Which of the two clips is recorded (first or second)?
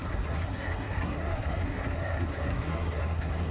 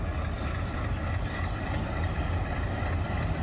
second